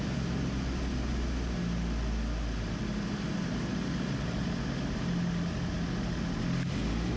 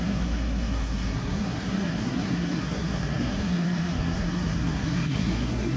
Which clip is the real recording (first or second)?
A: first